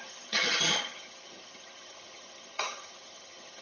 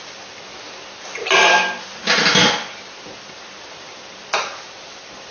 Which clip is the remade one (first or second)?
first